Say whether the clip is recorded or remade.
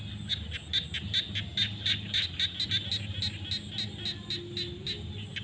recorded